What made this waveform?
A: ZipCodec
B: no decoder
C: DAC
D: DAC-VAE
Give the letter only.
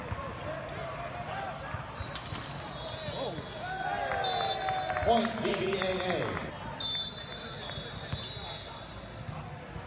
B